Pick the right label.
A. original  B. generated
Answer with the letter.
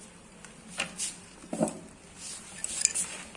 A